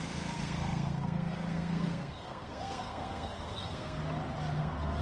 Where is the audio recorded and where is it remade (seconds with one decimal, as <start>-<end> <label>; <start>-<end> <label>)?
0.0-4.0 remade; 4.0-4.6 recorded; 4.6-5.0 remade